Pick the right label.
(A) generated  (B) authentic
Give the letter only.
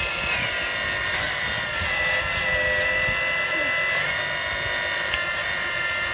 B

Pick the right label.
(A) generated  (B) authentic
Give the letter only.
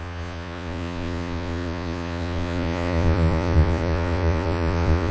A